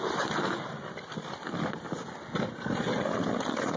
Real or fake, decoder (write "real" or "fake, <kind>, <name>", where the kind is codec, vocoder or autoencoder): real